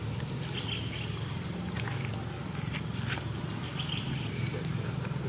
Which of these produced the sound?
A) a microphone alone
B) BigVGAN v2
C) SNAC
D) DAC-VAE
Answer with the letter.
A